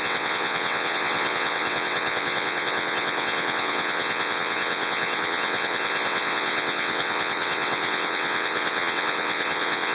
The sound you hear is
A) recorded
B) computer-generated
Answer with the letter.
B